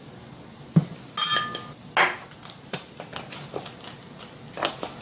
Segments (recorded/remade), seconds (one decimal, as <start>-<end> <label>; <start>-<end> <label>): 0.0-5.0 recorded